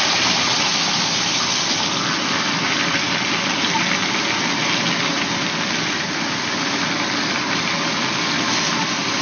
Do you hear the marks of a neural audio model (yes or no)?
no